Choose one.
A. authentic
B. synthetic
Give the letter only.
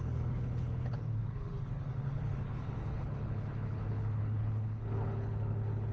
B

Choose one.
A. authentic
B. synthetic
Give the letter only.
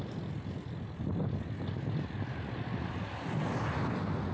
A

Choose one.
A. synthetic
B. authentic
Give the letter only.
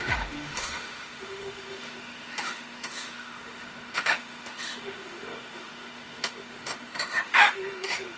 A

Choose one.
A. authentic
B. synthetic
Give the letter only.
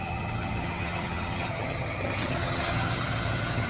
B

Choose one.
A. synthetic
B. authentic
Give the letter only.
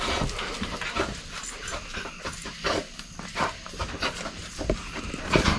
B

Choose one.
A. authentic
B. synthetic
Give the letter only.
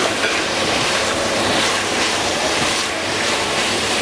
B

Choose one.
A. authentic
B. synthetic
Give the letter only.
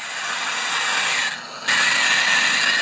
A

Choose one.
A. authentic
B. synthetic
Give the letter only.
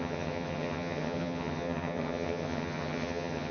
B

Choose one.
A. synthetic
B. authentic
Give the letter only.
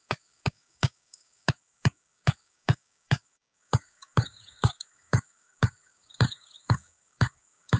A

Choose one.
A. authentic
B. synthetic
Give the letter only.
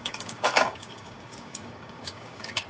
B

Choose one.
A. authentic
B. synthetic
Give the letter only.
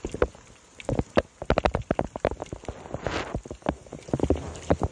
A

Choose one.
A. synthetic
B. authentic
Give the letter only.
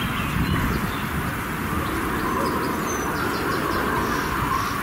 B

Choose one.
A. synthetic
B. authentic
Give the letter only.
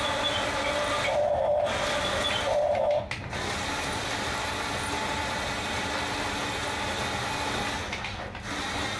B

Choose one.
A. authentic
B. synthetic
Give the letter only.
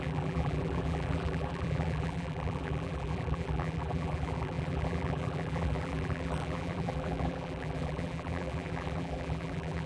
B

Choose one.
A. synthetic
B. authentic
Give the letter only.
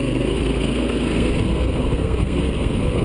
A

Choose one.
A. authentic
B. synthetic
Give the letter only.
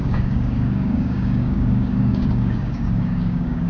B